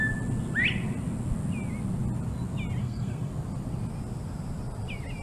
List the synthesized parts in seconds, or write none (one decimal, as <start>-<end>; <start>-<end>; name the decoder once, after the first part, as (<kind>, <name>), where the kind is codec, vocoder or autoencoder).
2.8-3.3 (codec, SNAC)